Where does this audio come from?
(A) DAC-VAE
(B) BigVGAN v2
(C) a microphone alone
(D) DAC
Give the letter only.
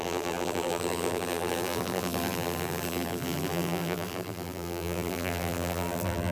B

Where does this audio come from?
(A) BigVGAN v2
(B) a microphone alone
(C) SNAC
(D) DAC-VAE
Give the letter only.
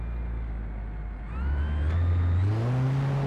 B